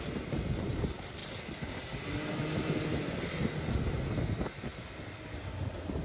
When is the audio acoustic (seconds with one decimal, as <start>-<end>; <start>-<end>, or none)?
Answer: 0.0-6.0